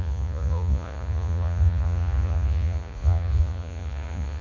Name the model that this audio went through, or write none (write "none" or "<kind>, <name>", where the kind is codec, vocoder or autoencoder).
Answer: vocoder, Vocos